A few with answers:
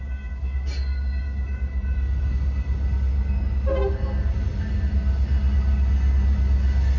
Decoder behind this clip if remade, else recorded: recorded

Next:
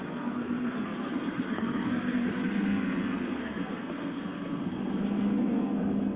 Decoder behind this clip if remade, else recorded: remade, codec, SNAC